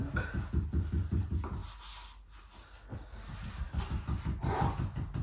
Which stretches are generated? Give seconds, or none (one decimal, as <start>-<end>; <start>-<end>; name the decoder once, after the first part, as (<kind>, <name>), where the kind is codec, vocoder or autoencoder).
none